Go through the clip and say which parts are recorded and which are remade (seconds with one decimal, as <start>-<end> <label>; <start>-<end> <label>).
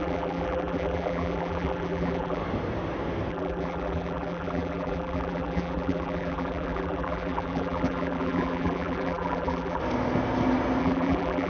0.0-2.4 remade; 2.4-3.3 recorded; 3.3-9.8 remade; 9.8-10.8 recorded; 10.8-11.5 remade